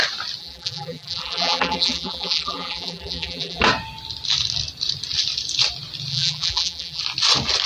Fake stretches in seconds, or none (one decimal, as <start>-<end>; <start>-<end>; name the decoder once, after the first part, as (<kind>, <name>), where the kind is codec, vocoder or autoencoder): 0.4-3.6 (vocoder, BigVGAN v2); 6.1-7.0